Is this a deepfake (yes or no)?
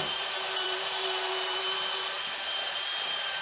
yes